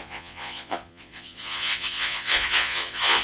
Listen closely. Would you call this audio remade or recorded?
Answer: remade